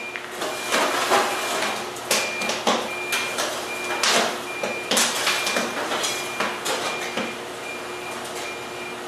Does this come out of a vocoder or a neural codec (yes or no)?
no